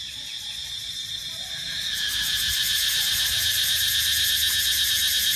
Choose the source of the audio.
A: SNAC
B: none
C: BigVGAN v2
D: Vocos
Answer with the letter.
B